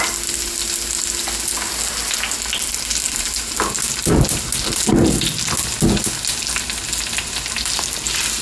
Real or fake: real